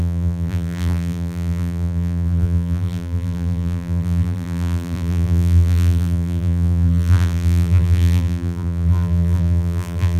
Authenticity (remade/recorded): remade